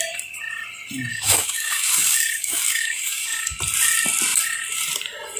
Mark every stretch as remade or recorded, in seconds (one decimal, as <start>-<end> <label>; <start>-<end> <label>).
0.0-1.1 recorded; 1.1-3.6 remade; 3.6-5.4 recorded